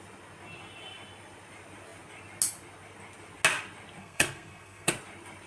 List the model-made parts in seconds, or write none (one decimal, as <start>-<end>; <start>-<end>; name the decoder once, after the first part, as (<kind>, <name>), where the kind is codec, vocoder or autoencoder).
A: 4.0-4.9 (codec, SNAC)